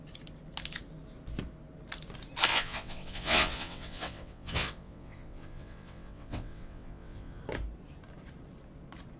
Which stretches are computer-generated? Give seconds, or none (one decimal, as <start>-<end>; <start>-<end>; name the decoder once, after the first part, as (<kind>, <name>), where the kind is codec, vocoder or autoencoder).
2.5-7.4 (vocoder, WaveNeXt)